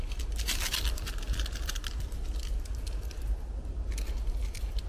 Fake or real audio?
real